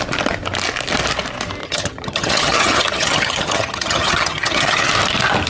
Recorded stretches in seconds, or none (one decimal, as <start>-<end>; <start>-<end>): 0.0-1.6; 4.9-5.5